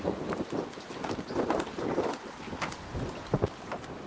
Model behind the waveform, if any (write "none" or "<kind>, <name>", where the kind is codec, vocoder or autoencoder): none